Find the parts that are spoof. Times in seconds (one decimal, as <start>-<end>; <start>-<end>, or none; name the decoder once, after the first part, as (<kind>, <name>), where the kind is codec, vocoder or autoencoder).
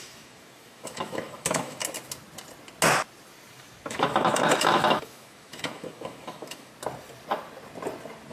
0.0-1.8 (autoencoder, DAC-VAE); 3.9-6.7